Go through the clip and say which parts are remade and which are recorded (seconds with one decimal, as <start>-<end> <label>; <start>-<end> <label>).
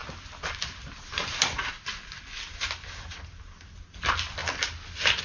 0.0-5.2 recorded